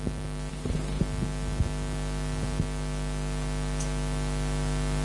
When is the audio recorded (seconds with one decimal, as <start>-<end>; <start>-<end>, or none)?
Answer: 0.0-0.5; 1.0-5.0